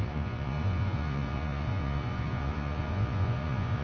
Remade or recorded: remade